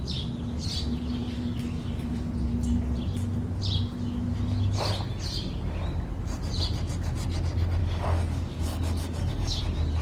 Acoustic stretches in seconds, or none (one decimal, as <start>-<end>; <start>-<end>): 0.0-1.2; 2.3-7.8; 9.6-10.0